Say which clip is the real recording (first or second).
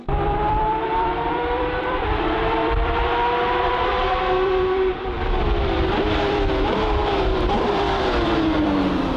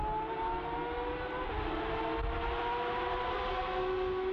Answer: second